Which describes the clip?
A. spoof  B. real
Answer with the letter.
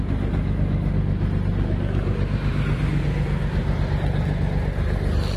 B